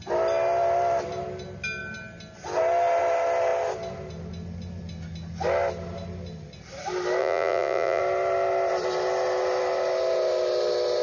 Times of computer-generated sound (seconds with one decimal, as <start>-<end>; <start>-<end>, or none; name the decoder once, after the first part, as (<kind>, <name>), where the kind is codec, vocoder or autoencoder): 7.2-8.0 (vocoder, Vocos)